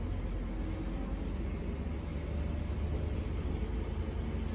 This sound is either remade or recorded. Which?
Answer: recorded